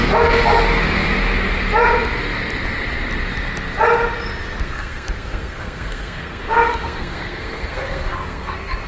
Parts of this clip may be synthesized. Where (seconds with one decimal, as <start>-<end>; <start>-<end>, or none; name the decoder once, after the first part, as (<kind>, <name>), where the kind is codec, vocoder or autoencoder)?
4.6-8.9 (codec, SNAC)